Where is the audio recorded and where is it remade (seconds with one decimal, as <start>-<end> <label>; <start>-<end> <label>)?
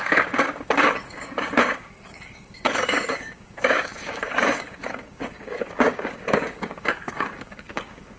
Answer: 0.0-8.2 remade